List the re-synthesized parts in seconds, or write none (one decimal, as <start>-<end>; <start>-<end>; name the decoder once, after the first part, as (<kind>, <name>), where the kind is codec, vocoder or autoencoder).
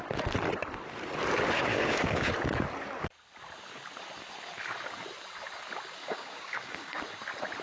1.7-2.3 (codec, DAC); 6.0-7.0